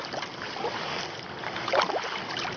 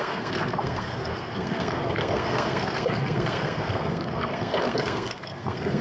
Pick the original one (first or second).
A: first